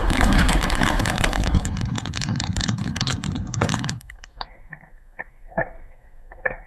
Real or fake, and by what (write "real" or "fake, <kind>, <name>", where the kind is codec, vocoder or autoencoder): fake, codec, SNAC